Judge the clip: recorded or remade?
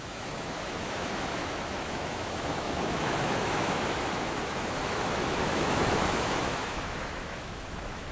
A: remade